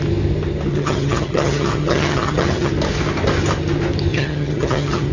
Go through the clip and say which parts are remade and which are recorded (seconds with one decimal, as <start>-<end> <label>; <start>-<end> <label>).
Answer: 0.0-0.7 recorded; 0.7-2.7 remade; 2.7-4.1 recorded; 4.1-5.1 remade